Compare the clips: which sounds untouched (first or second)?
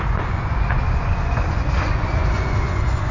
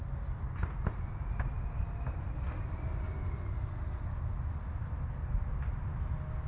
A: second